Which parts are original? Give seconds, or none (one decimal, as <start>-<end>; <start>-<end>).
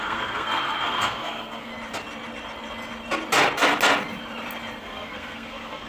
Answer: 1.7-4.8